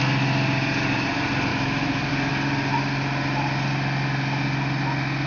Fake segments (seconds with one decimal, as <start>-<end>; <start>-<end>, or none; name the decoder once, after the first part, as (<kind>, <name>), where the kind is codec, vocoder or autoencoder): 1.5-2.1 (autoencoder, DAC-VAE)